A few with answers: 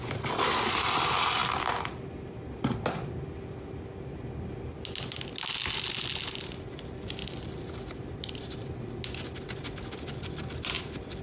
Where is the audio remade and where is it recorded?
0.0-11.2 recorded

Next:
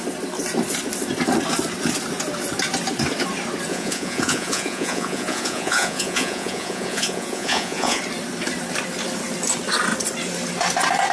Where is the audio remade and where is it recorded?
0.0-3.7 recorded; 3.7-8.0 remade; 8.0-11.1 recorded

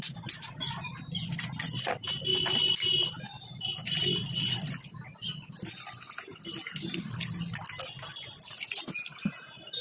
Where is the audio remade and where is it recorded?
0.0-9.8 recorded

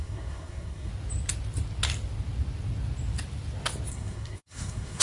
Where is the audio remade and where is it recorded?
0.0-0.9 remade; 0.9-3.9 recorded; 3.9-5.0 remade

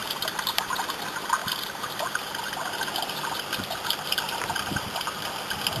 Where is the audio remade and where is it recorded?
0.0-0.8 remade; 0.8-1.4 recorded; 1.4-2.3 remade; 2.3-5.8 recorded

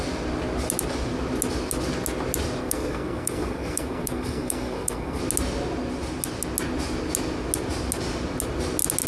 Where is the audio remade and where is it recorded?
0.0-2.6 recorded; 2.6-5.2 remade; 5.2-9.1 recorded

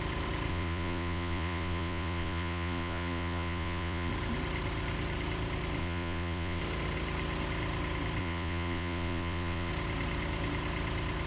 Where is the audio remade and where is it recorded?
0.0-0.5 recorded; 0.5-4.1 remade; 4.1-5.8 recorded; 5.8-6.6 remade; 6.6-8.2 recorded; 8.2-9.7 remade; 9.7-11.3 recorded